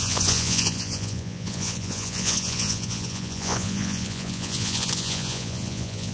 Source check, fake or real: fake